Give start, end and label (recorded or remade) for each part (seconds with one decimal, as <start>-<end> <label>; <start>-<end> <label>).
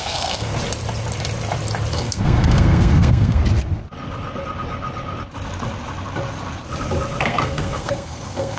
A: 0.0-0.5 remade; 0.5-1.9 recorded; 1.9-3.4 remade; 3.4-7.2 recorded; 7.2-8.6 remade